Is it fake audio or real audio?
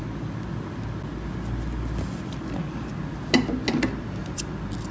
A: real